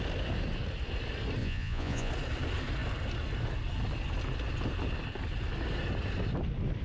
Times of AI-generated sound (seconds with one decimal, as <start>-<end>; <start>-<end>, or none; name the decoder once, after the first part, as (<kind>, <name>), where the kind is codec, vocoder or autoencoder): 1.4-2.1 (vocoder, Vocos)